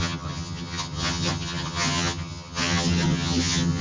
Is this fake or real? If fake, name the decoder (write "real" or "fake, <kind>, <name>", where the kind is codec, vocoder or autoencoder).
fake, vocoder, HiFi-GAN